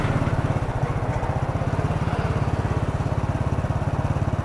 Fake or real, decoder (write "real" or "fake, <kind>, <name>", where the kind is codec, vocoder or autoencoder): real